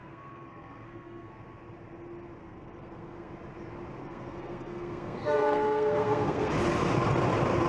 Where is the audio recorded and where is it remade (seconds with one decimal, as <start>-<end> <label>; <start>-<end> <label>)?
0.0-1.3 remade; 1.3-2.4 recorded; 2.4-3.3 remade; 3.3-4.0 recorded; 4.0-6.5 remade; 6.5-7.7 recorded